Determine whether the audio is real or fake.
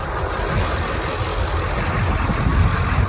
real